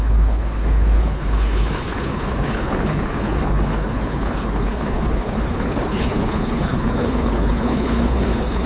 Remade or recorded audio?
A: remade